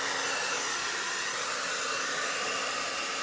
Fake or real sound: real